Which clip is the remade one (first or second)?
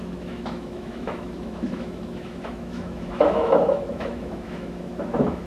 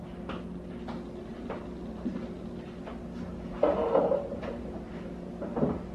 first